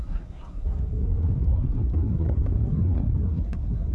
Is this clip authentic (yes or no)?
no